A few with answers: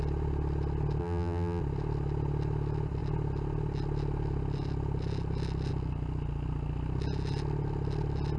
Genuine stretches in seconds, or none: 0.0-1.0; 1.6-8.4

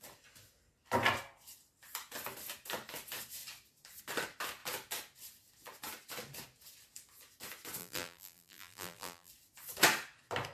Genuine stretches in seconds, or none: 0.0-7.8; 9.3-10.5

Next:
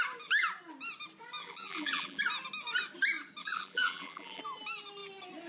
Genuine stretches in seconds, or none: 0.0-1.4; 2.2-3.4; 4.4-5.5

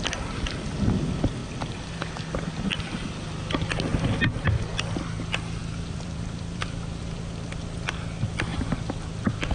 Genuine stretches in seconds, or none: 0.0-1.4; 2.1-5.6; 7.0-9.5

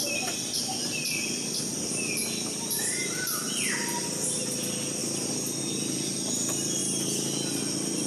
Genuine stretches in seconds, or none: 0.0-8.1

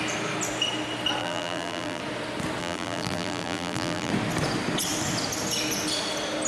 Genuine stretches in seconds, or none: 0.0-1.2; 2.0-2.6; 4.1-6.5

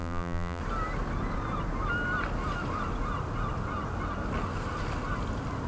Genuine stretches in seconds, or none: 0.6-5.7